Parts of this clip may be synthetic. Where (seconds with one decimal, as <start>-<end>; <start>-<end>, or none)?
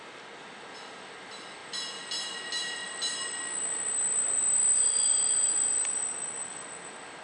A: none